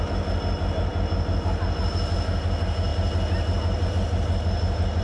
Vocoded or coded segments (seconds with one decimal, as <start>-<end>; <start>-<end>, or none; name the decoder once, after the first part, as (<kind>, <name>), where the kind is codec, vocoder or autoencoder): none

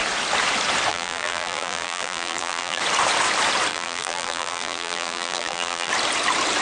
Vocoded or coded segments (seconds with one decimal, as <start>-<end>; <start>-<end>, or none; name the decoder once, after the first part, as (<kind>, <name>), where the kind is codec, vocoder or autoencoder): 0.9-2.8 (vocoder, BigVGAN v2); 3.7-5.9